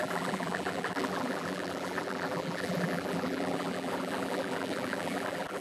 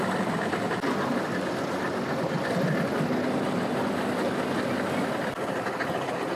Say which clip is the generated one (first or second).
first